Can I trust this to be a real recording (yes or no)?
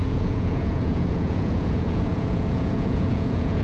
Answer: no